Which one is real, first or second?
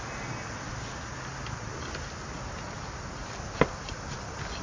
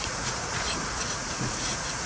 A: first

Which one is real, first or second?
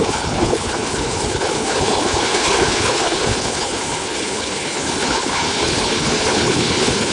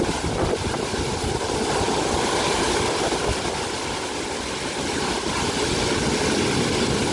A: second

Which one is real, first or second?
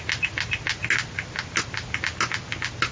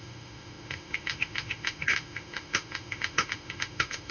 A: first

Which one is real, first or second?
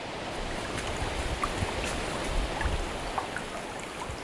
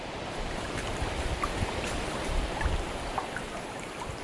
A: first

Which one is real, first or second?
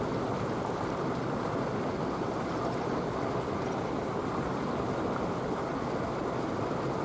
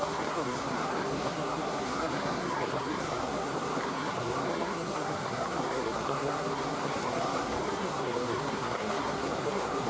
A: first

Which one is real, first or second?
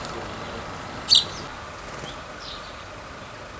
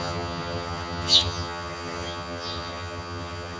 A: first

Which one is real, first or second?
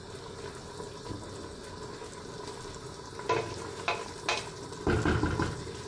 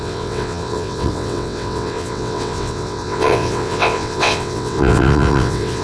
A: first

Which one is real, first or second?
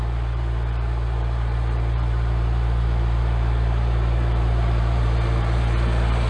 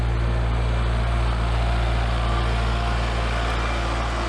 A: second